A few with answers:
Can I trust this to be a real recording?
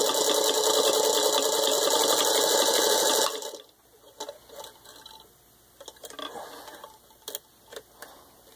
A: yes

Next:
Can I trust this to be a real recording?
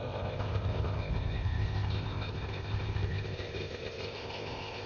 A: no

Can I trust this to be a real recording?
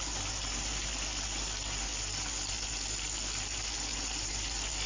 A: yes